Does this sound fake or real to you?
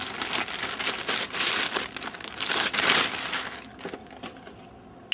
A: real